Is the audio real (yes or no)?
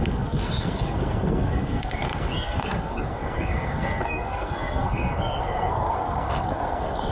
no